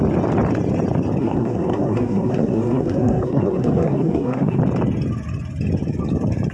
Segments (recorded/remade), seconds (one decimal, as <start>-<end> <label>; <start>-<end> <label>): 0.0-1.2 recorded; 1.2-4.6 remade; 4.6-6.5 recorded